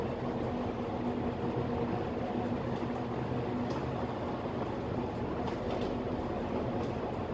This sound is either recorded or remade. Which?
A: recorded